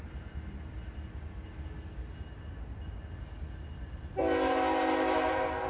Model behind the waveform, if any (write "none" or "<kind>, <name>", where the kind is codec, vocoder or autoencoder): none